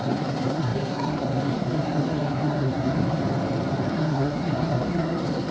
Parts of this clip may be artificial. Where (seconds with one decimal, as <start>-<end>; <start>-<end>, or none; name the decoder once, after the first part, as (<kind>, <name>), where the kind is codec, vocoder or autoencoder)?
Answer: 0.0-3.2 (codec, SNAC); 3.9-5.5